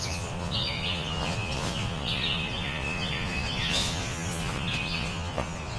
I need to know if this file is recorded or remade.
remade